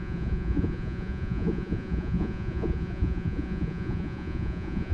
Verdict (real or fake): fake